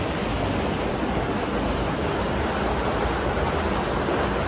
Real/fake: real